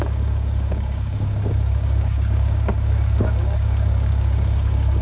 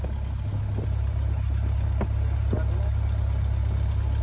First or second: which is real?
second